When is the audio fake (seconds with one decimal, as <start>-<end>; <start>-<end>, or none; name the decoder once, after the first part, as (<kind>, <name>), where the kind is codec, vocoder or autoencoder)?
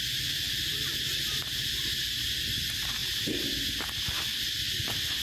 0.0-3.0 (vocoder, BigVGAN v2); 3.7-5.2